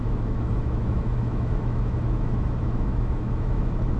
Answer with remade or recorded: remade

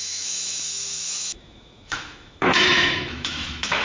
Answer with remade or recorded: remade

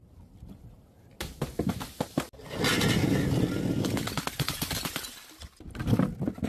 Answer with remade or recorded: recorded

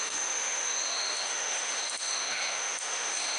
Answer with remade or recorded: remade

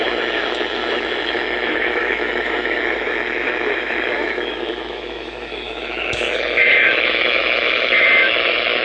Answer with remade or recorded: remade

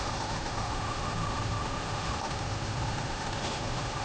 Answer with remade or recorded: remade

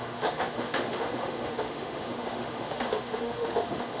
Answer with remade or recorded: remade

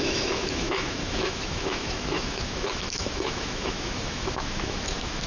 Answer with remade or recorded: remade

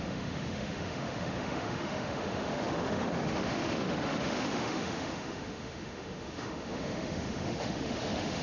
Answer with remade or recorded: remade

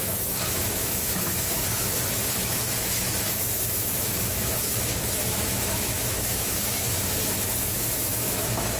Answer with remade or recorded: remade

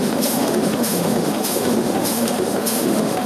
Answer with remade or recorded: remade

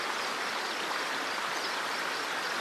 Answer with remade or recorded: recorded